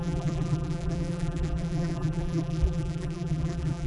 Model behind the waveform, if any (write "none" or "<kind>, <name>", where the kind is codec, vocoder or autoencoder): vocoder, BigVGAN v2